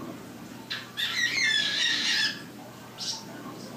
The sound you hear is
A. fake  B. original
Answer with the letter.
B